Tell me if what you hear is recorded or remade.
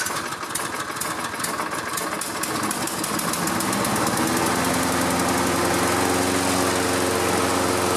recorded